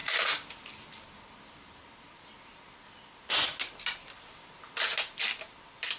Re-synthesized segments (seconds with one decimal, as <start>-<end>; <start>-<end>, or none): none

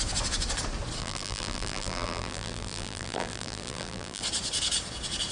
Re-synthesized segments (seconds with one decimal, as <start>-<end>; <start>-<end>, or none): 1.0-4.2

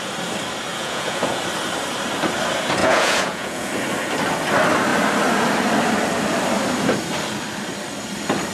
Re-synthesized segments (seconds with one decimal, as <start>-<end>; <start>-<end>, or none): 0.7-1.4; 2.8-3.7

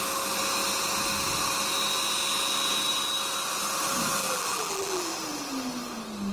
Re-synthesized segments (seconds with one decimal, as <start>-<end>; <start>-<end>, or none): 4.2-5.1

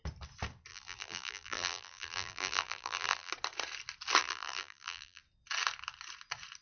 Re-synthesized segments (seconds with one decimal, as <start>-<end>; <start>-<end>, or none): 0.7-3.3; 4.2-5.2

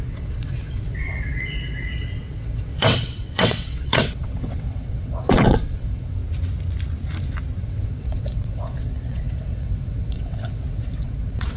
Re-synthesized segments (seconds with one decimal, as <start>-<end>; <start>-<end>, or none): 0.0-6.2; 7.6-11.6

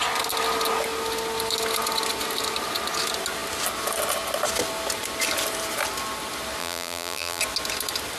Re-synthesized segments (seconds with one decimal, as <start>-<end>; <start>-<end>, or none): 6.6-7.4

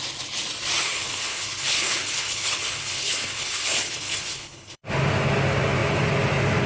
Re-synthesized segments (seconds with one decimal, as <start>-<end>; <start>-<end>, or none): 0.8-4.8